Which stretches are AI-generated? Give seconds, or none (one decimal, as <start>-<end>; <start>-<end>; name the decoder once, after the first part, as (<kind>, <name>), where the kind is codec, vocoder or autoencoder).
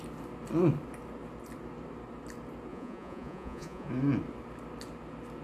2.7-3.9 (vocoder, Vocos)